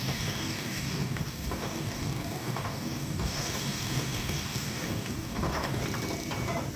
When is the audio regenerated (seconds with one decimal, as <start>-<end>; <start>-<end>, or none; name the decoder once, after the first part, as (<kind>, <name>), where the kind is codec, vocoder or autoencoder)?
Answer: 0.0-5.8 (codec, DAC)